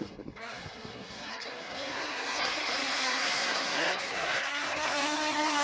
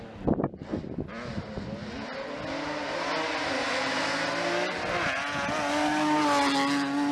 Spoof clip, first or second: first